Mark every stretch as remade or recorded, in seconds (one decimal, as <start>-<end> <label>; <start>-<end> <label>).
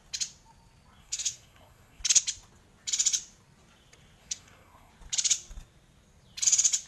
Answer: 0.0-1.0 recorded; 1.0-2.0 remade; 2.0-4.2 recorded; 4.2-4.9 remade; 4.9-6.9 recorded